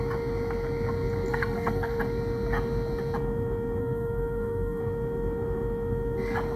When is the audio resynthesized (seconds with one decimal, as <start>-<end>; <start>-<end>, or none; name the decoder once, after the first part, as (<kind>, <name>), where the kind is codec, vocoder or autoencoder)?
1.3-2.0 (codec, SNAC); 3.8-4.8